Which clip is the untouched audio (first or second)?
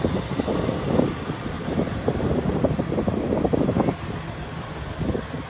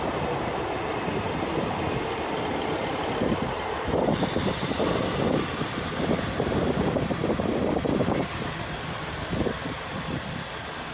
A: first